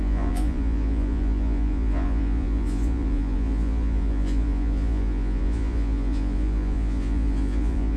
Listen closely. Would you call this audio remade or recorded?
remade